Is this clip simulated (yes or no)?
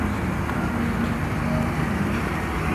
no